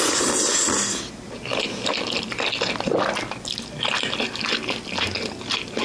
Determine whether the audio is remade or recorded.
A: recorded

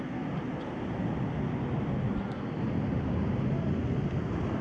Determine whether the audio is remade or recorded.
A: recorded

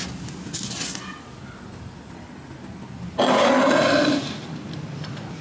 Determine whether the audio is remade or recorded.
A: recorded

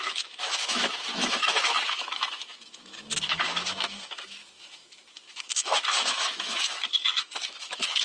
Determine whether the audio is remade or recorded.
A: remade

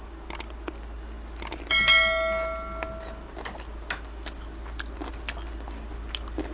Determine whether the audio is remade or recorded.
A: recorded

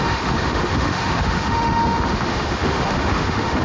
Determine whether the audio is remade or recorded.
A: remade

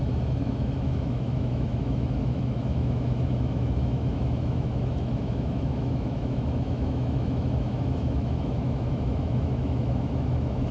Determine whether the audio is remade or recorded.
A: remade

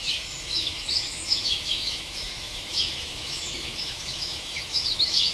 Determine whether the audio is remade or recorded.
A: remade